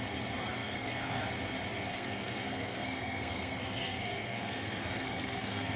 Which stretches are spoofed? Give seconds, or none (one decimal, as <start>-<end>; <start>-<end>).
0.6-1.2; 1.9-5.8